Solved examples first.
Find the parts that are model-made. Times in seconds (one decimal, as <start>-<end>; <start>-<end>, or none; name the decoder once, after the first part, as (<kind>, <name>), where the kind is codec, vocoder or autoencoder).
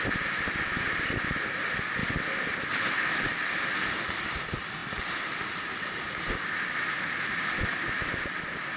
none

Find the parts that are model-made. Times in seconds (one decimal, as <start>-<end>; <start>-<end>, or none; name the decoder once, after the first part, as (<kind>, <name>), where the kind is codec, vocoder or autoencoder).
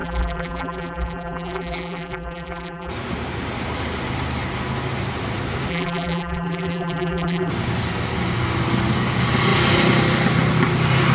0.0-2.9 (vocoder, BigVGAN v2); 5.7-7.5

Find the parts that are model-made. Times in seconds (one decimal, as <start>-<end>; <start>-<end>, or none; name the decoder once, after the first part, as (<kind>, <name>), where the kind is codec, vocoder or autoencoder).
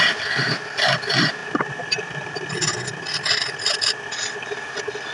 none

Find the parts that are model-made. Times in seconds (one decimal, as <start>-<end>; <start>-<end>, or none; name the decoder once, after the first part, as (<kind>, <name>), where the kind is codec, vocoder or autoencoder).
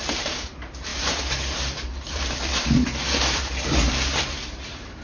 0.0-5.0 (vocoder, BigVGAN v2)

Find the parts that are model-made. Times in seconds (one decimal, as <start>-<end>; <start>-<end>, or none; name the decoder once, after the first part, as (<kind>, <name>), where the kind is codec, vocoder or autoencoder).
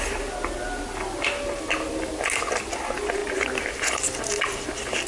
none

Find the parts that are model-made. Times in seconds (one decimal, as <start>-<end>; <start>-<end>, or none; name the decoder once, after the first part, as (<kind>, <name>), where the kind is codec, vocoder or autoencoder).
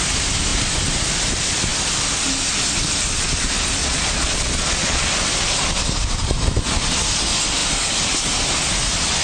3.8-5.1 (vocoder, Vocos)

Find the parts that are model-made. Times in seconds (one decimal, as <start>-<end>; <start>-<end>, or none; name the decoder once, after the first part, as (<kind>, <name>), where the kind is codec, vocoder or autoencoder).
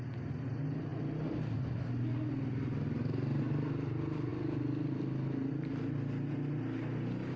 none